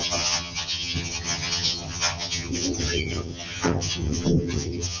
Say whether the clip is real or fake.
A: fake